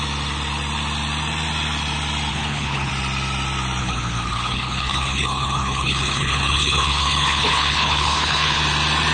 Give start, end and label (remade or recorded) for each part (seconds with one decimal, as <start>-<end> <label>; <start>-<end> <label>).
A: 0.0-2.3 recorded; 2.3-2.9 remade; 2.9-3.8 recorded; 3.8-8.6 remade; 8.6-9.1 recorded